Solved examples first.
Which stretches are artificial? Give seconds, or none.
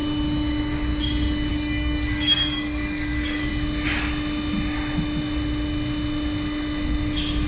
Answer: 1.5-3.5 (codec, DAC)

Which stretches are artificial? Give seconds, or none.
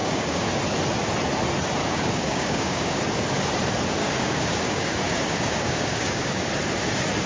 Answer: 0.0-0.5 (codec, DAC); 1.8-3.0; 4.0-6.5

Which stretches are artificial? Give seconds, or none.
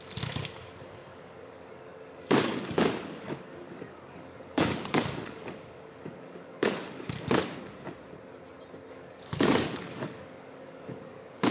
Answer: 0.0-7.4 (codec, DAC); 8.9-11.5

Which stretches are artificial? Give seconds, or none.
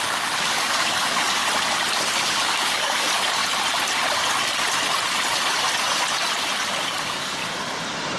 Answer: 0.0-1.4 (codec, DAC); 1.9-3.4; 6.8-7.4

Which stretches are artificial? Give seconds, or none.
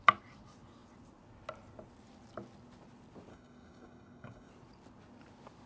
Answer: 3.3-4.5 (codec, DAC)